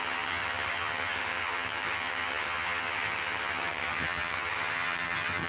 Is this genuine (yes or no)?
no